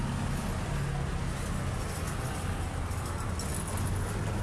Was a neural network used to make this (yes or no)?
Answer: no